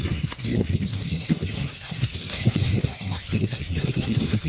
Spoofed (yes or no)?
yes